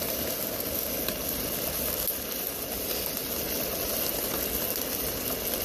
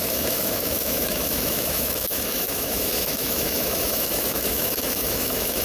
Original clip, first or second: first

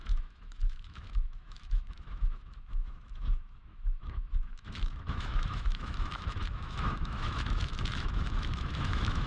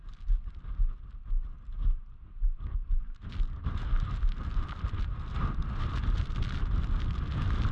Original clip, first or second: second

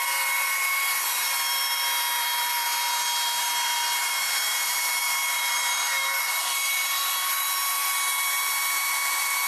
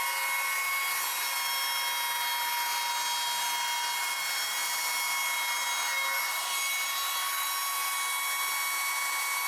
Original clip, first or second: second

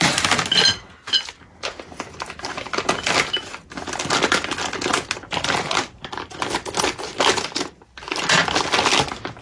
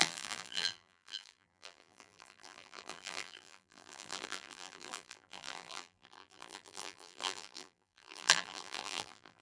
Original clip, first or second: first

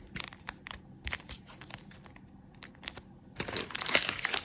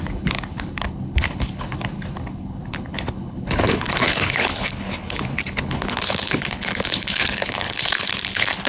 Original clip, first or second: first